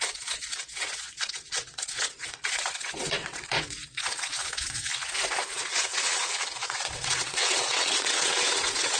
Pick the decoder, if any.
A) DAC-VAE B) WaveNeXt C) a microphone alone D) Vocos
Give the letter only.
B